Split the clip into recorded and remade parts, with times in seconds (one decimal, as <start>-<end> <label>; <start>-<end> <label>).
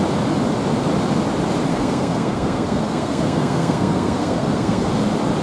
0.0-1.7 recorded; 1.7-4.9 remade; 4.9-5.4 recorded